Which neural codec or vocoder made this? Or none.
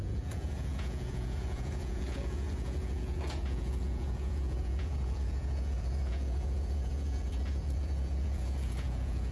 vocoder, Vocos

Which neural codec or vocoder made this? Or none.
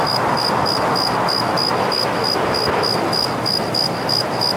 none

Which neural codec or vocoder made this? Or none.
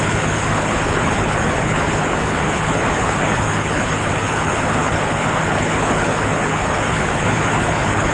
codec, HILCodec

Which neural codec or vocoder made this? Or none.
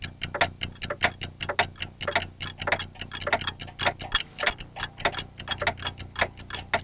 none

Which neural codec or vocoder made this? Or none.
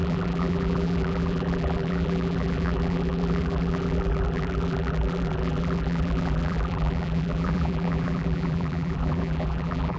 vocoder, BigVGAN v2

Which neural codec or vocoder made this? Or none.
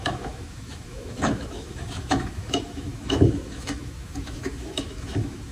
autoencoder, DAC-VAE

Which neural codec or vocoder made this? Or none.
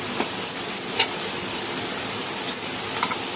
none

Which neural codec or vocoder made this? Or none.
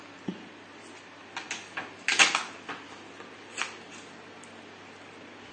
none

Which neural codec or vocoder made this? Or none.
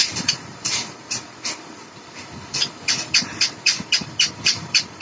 vocoder, BigVGAN v2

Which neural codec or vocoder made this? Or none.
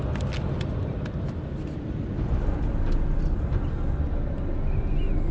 none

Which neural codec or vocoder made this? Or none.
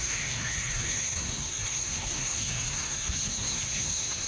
codec, SNAC